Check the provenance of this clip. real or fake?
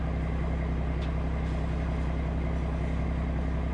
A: real